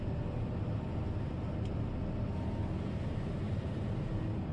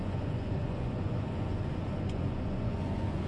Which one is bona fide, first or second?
first